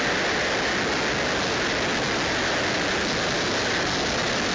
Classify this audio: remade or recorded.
recorded